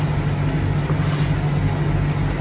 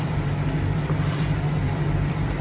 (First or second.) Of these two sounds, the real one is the first